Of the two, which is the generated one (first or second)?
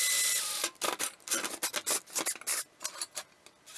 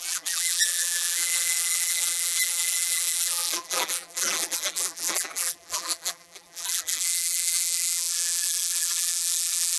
second